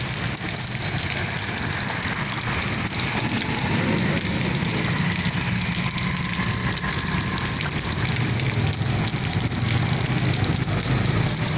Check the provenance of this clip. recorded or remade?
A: recorded